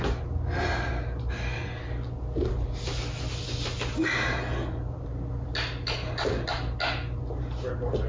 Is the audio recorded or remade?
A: recorded